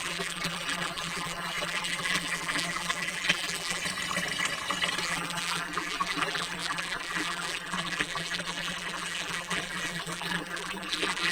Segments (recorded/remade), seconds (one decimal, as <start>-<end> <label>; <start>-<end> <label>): 0.0-3.8 remade; 3.8-5.0 recorded; 5.0-11.3 remade